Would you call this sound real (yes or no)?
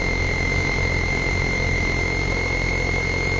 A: yes